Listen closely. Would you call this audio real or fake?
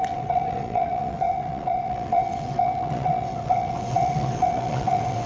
fake